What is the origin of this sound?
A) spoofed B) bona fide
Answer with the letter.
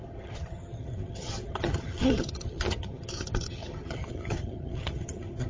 A